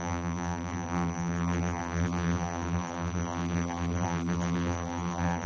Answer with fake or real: fake